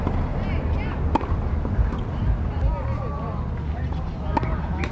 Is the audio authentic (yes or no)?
yes